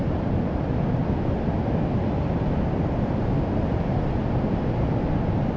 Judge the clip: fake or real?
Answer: real